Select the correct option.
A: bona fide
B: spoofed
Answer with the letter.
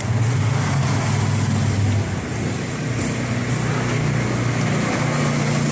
A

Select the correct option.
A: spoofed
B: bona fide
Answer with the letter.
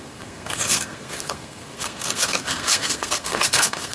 A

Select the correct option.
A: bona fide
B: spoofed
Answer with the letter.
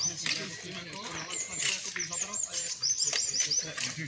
A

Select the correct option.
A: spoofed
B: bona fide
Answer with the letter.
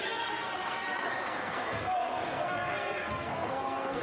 A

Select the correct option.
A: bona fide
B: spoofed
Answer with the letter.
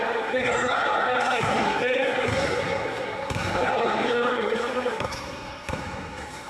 B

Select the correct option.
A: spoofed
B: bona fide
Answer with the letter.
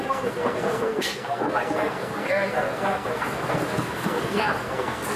A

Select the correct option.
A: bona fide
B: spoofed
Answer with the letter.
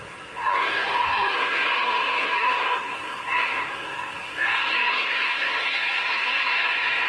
B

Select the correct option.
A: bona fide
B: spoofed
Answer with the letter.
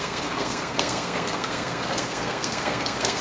B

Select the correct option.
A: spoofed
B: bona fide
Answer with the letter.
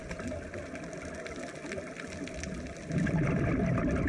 B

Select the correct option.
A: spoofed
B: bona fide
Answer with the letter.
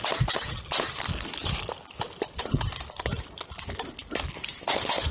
B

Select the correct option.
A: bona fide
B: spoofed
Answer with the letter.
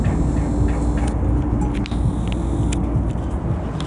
A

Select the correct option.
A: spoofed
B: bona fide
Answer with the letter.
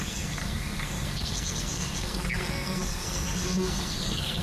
A